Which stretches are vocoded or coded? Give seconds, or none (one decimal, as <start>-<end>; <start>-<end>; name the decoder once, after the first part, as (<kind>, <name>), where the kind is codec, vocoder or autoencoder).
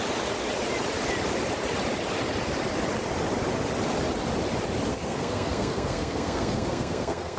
4.9-7.4 (codec, SNAC)